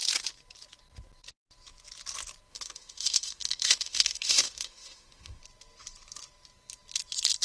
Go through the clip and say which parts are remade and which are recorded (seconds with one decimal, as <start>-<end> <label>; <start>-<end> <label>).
0.0-2.5 recorded; 2.5-5.4 remade; 5.4-7.4 recorded

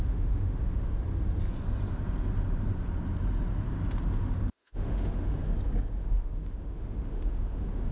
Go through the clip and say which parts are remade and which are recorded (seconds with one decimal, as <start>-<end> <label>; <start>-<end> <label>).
0.0-0.9 remade; 0.9-4.1 recorded; 4.1-5.4 remade; 5.4-6.0 recorded; 6.0-7.9 remade

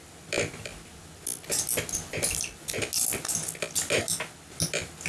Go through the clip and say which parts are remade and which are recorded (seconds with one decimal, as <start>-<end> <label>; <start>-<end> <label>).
0.0-5.1 recorded

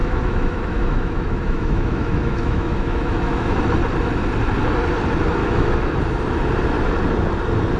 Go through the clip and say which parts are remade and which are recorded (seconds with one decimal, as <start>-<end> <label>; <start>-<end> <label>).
0.0-3.6 remade; 3.6-5.4 recorded; 5.4-6.0 remade; 6.0-7.8 recorded

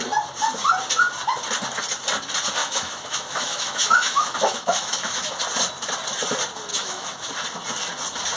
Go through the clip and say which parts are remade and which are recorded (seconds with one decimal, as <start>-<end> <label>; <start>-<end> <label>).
0.0-2.6 recorded; 2.6-5.3 remade; 5.3-6.7 recorded; 6.7-7.3 remade; 7.3-8.4 recorded

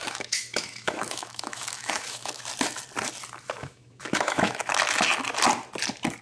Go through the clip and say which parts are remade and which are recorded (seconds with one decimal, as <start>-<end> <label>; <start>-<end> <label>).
0.0-2.5 remade; 2.5-3.6 recorded; 3.6-4.7 remade; 4.7-6.2 recorded

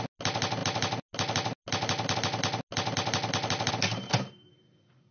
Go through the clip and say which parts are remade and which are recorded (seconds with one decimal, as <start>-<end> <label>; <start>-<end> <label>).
0.0-5.1 recorded